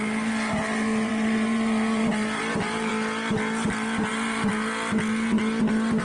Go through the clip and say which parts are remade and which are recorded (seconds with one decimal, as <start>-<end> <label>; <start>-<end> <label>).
0.0-2.9 remade; 2.9-4.1 recorded; 4.1-4.5 remade; 4.5-6.0 recorded